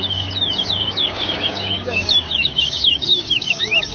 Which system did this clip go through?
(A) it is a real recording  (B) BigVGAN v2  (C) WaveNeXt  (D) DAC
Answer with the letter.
D